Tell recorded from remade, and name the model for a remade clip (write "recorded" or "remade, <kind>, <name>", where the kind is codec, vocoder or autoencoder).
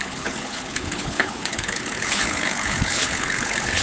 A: remade, codec, HILCodec